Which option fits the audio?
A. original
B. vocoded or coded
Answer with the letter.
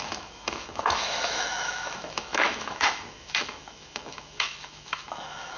B